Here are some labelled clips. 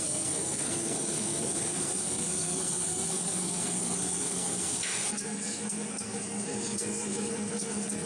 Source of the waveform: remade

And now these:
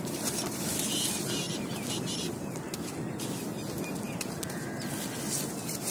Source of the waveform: recorded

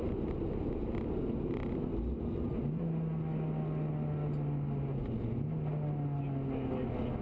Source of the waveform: recorded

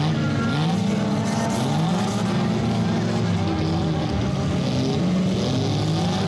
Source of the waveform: recorded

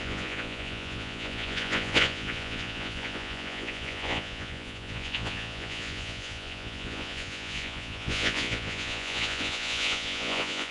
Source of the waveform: remade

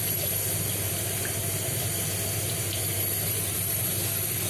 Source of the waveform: recorded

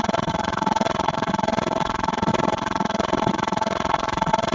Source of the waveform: remade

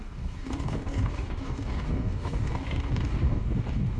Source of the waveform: remade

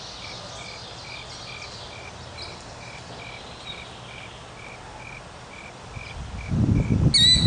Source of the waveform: recorded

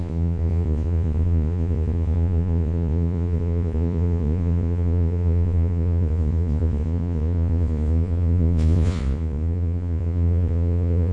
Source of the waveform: remade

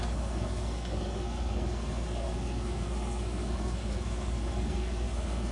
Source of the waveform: remade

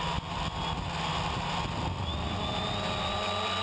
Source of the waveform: recorded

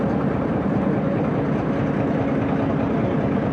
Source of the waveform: recorded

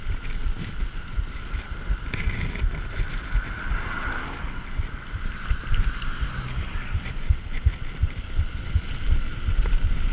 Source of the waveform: recorded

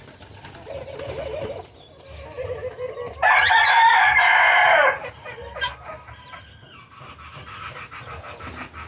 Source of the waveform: recorded